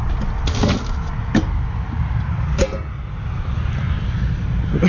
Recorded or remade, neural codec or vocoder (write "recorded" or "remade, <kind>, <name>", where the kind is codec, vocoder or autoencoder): recorded